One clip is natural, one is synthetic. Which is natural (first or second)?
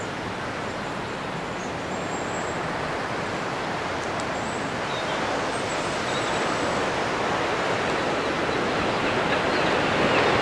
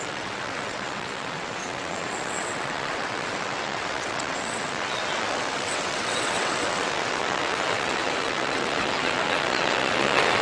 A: first